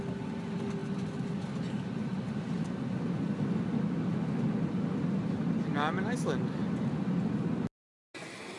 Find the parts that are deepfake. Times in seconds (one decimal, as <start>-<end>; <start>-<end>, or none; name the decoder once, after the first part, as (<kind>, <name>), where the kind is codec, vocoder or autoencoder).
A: none